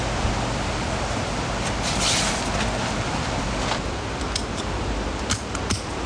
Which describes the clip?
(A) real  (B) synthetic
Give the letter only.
A